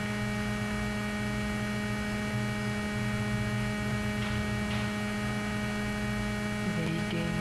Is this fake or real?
real